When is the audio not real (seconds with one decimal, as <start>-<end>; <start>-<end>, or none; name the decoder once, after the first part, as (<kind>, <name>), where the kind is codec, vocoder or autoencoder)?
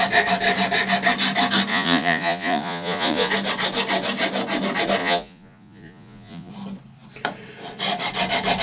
1.7-3.3 (vocoder, Vocos); 5.0-6.5